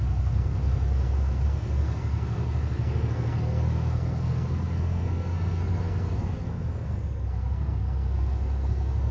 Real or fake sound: fake